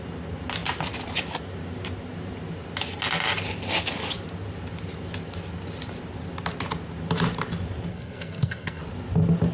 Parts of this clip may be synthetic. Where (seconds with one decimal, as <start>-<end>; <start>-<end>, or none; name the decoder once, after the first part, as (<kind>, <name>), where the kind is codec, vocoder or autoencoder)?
7.9-8.8 (codec, SNAC)